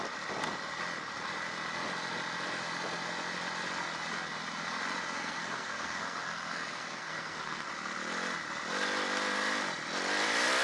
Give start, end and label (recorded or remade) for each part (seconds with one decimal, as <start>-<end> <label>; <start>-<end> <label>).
0.0-5.2 recorded; 5.2-7.7 remade; 7.7-10.6 recorded